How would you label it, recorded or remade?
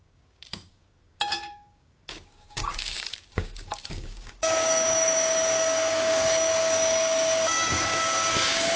remade